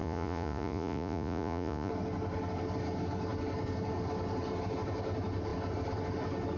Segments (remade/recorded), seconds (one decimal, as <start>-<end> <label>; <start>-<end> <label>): 0.0-1.9 remade; 1.9-6.6 recorded